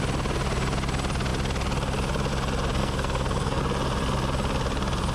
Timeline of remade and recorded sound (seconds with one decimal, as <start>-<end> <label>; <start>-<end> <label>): 0.0-2.8 recorded; 2.8-3.6 remade; 3.6-5.1 recorded